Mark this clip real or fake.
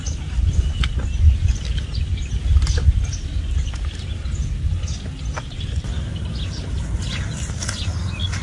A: real